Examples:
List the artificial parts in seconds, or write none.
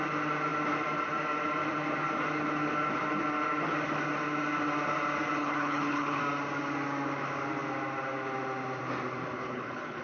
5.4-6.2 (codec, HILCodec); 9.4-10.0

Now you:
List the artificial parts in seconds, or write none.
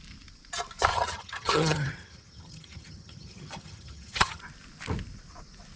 0.9-4.4 (vocoder, HiFi-GAN)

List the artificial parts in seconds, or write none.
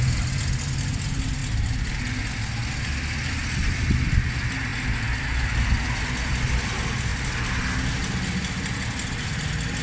none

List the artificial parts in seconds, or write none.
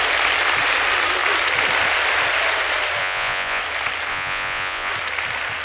3.0-3.6 (vocoder, Vocos); 4.1-4.9